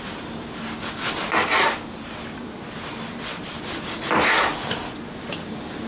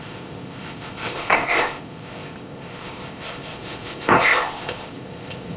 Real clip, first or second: first